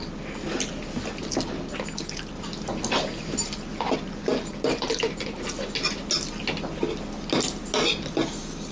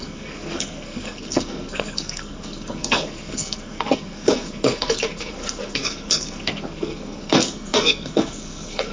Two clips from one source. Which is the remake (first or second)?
second